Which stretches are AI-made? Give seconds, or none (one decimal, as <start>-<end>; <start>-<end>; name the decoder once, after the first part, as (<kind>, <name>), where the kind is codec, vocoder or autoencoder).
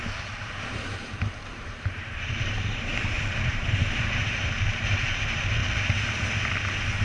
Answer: 0.0-2.9 (vocoder, BigVGAN v2); 3.5-5.6